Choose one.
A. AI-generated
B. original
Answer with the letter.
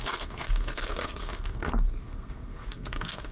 A